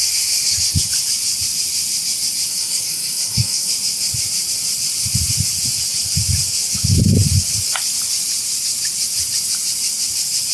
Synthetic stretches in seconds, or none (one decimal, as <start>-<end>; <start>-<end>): 2.5-3.7